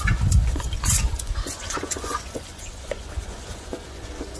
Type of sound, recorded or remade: remade